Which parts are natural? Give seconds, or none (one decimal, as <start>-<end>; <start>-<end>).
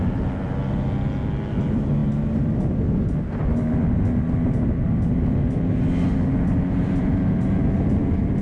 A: 0.0-8.4